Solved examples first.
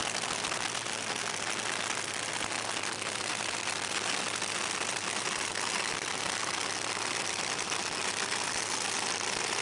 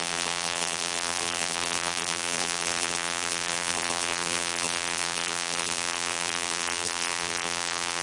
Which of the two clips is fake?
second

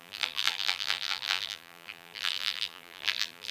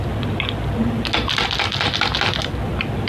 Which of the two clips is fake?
first